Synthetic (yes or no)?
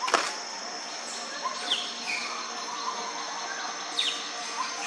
no